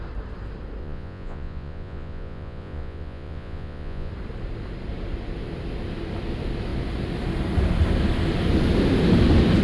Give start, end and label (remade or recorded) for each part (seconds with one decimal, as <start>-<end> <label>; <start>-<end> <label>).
0.0-0.8 recorded; 0.8-4.1 remade; 4.1-9.6 recorded